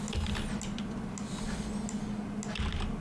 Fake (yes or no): no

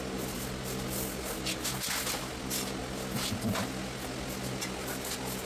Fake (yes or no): no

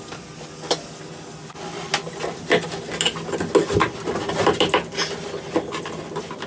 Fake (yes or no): no